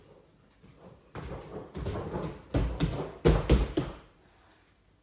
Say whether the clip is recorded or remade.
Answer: recorded